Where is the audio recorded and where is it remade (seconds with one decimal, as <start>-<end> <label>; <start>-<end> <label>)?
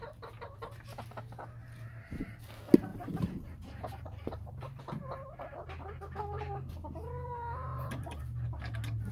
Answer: 0.0-2.9 recorded; 2.9-4.8 remade; 4.8-7.7 recorded; 7.7-8.2 remade; 8.2-9.1 recorded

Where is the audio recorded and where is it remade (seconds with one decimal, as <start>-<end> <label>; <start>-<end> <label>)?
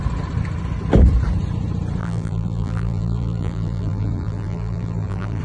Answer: 0.0-2.0 recorded; 2.0-5.4 remade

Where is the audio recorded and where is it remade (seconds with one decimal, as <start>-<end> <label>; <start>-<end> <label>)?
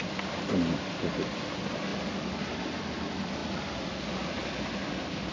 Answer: 0.0-1.9 recorded; 1.9-2.6 remade; 2.6-5.3 recorded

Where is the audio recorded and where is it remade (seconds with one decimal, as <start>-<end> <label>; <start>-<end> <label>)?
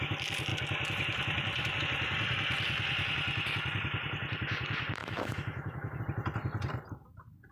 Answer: 0.0-5.0 recorded; 5.0-6.0 remade; 6.0-7.5 recorded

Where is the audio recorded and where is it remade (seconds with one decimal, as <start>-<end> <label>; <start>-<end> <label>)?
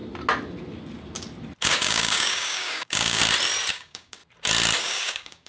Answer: 0.0-1.6 recorded; 1.6-3.2 remade; 3.2-3.7 recorded; 3.7-4.2 remade; 4.2-4.8 recorded; 4.8-5.5 remade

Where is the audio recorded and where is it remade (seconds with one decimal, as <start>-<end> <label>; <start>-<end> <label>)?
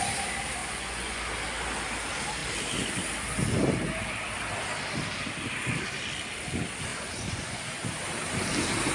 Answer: 0.0-0.6 recorded; 0.6-1.2 remade; 1.2-6.9 recorded; 6.9-7.6 remade; 7.6-8.9 recorded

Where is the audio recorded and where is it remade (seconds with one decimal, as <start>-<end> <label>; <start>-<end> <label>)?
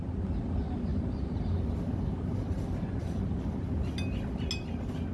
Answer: 0.0-5.1 recorded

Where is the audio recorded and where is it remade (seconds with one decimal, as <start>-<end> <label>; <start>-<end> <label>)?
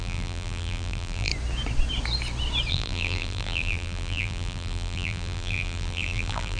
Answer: 0.0-1.3 remade; 1.3-2.7 recorded; 2.7-6.6 remade